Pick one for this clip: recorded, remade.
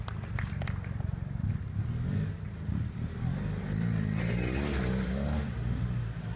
recorded